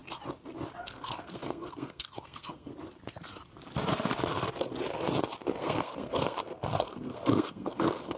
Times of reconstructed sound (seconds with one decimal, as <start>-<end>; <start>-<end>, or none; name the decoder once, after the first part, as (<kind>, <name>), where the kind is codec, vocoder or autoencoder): 0.8-2.7 (codec, SNAC); 5.6-8.2